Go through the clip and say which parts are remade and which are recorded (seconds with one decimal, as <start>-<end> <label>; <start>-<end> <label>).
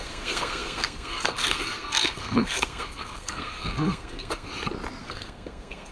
0.0-4.5 remade; 4.5-5.0 recorded; 5.0-5.9 remade